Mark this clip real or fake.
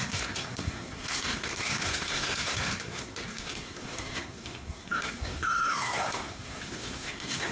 fake